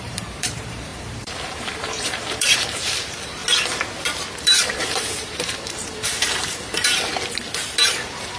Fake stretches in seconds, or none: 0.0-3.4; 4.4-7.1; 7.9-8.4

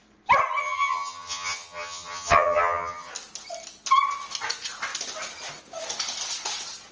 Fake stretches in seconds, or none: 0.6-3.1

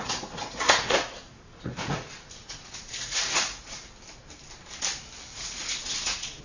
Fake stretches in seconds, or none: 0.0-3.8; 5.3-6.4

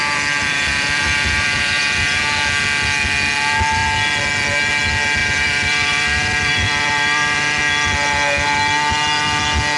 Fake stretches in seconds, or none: 0.4-2.2; 5.2-7.6

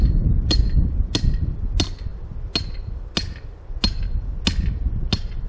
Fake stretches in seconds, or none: none

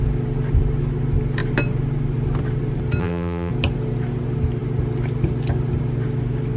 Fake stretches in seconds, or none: 3.0-3.5